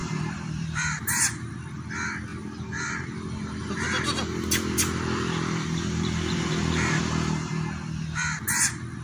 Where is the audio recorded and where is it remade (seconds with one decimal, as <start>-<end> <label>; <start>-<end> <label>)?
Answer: 0.0-1.5 remade; 1.5-2.3 recorded; 2.3-7.0 remade; 7.0-9.0 recorded